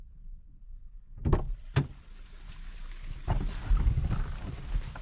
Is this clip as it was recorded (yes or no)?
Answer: yes